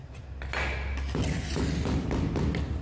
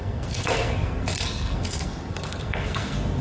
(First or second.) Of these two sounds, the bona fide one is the first